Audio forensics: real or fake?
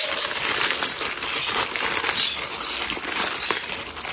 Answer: fake